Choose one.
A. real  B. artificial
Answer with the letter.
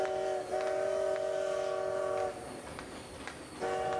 A